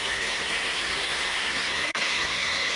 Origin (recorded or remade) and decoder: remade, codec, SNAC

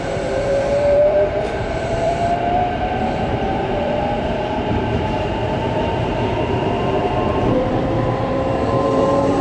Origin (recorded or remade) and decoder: remade, vocoder, BigVGAN v2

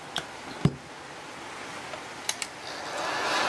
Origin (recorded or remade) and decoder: recorded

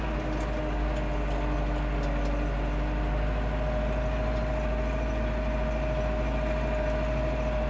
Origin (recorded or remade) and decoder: recorded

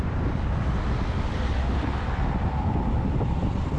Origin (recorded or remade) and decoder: remade, vocoder, BigVGAN v2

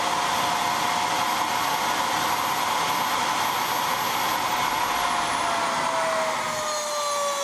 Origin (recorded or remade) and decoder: recorded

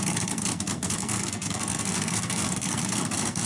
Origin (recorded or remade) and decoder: remade, codec, SNAC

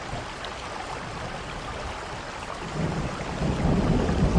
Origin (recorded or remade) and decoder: recorded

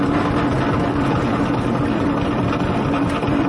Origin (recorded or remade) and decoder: recorded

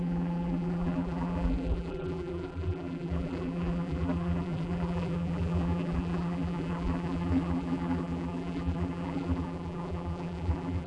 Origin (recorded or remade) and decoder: remade, vocoder, BigVGAN v2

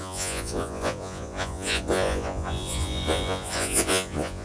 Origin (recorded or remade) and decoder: remade, vocoder, Vocos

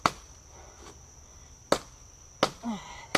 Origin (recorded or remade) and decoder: recorded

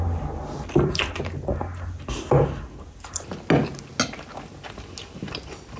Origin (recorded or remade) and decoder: recorded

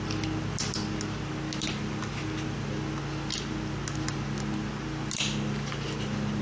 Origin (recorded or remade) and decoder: recorded